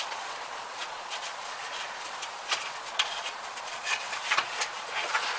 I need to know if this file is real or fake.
fake